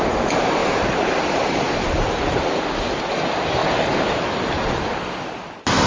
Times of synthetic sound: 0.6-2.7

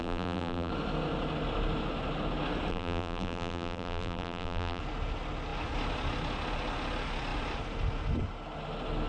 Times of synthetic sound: 0.0-0.7; 2.7-4.8

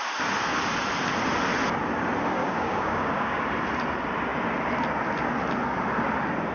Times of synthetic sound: 2.4-3.4

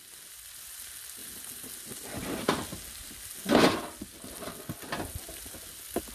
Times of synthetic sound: none

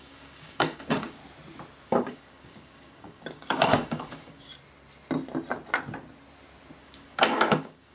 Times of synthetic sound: 0.0-1.2; 1.9-4.5; 6.8-7.9

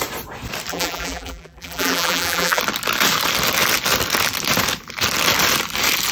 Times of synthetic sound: 0.7-2.6

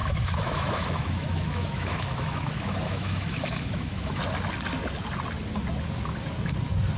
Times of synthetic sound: 0.0-4.2